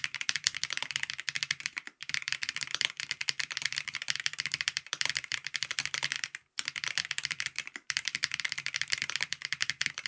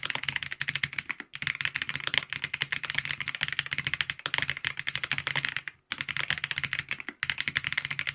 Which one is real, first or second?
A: second